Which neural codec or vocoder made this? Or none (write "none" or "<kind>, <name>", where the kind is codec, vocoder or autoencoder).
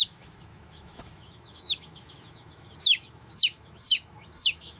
autoencoder, DAC-VAE